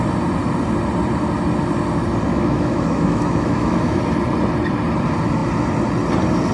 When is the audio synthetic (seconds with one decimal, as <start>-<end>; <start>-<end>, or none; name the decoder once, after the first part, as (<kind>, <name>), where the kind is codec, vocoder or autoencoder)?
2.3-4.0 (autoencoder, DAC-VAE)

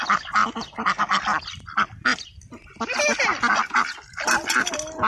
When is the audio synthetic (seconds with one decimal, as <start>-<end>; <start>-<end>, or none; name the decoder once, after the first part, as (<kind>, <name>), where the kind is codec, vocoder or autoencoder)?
none

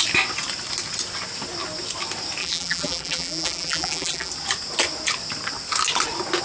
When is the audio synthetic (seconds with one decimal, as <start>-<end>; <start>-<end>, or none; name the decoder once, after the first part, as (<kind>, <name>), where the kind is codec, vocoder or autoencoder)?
2.4-4.3 (vocoder, BigVGAN v2)

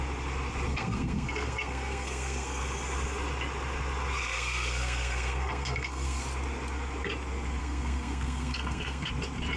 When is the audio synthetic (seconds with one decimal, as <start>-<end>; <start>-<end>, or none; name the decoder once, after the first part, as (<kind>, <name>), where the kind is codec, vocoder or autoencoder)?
0.7-2.6 (codec, SNAC); 4.2-6.2; 7.6-9.1

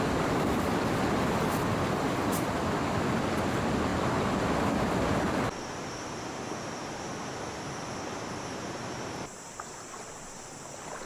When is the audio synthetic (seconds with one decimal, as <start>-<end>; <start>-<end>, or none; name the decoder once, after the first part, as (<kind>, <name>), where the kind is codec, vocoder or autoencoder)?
none

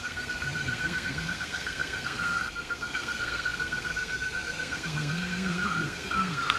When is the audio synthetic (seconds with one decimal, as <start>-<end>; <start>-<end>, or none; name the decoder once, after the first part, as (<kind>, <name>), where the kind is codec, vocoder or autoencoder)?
0.0-6.6 (codec, SNAC)